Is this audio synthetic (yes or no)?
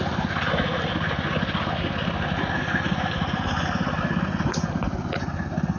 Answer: no